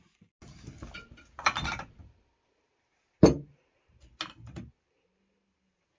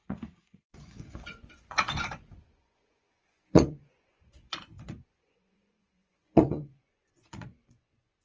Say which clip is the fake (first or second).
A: second